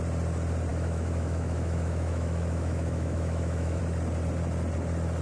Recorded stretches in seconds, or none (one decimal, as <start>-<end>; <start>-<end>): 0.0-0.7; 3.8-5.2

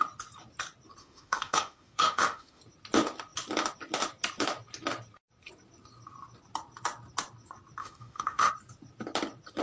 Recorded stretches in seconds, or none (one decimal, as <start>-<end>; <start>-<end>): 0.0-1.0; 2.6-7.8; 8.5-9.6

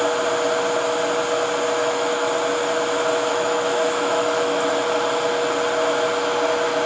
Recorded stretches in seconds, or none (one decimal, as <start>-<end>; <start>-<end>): 0.0-1.8; 2.3-3.3; 4.7-6.9

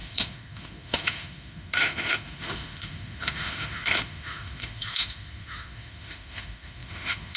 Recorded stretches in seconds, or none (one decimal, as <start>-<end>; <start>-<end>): none